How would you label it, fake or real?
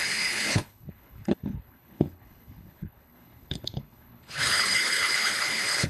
fake